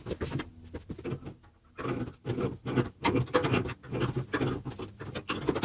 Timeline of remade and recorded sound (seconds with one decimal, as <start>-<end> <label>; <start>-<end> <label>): 0.0-5.6 recorded